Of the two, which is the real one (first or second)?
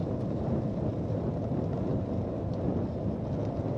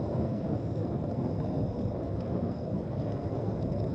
first